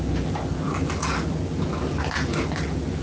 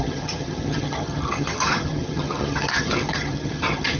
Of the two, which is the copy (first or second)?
second